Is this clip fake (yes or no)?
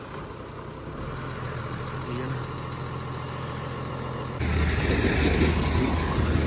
no